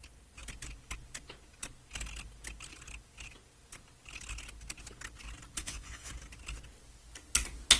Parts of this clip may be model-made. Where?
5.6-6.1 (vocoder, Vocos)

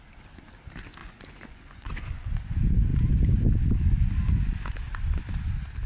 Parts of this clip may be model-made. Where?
1.0-2.4 (vocoder, Vocos)

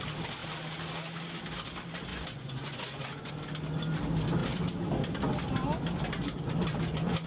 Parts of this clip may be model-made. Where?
2.1-3.3 (vocoder, Vocos)

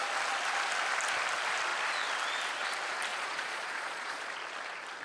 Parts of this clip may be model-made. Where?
3.1-4.3 (vocoder, Vocos)

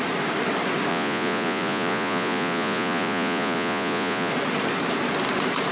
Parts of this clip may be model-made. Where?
0.9-4.3 (vocoder, Vocos)

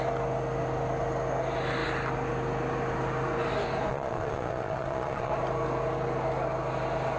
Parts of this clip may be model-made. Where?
3.9-5.3 (vocoder, Vocos)

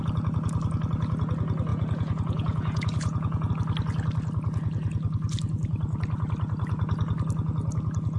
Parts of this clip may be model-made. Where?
1.7-3.5 (vocoder, Vocos)